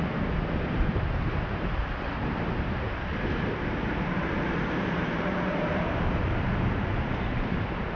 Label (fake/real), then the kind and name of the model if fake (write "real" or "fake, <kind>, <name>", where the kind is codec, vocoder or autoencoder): fake, vocoder, BigVGAN v2